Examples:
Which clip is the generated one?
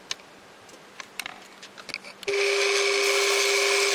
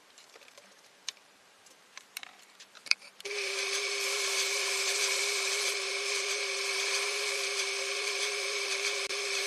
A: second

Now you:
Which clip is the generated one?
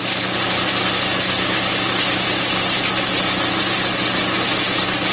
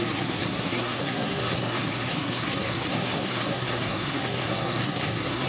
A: second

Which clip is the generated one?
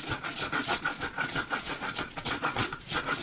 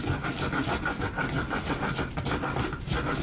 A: first